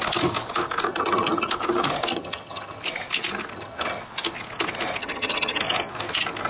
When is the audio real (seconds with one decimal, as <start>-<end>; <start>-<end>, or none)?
0.0-0.9; 1.5-2.1; 2.8-3.5; 4.0-5.0; 5.6-6.5